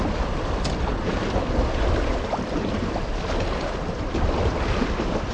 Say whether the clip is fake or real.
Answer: fake